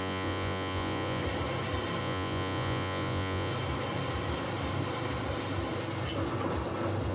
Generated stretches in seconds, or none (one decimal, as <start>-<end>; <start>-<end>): 0.0-1.2; 2.0-3.5